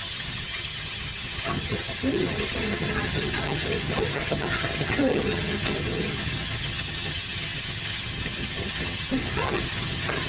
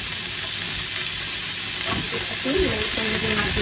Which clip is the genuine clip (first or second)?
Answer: second